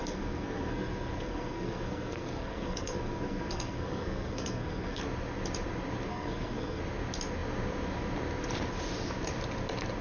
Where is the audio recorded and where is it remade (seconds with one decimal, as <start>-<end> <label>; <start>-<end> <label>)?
0.0-5.0 remade; 5.0-6.1 recorded; 6.1-6.8 remade; 6.8-10.0 recorded